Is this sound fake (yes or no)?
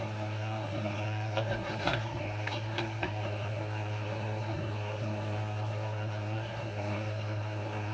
yes